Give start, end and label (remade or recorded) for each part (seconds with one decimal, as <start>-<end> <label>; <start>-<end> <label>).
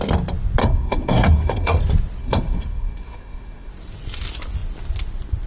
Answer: 0.0-0.6 recorded; 0.6-1.8 remade; 1.8-2.2 recorded; 2.2-3.7 remade; 3.7-5.5 recorded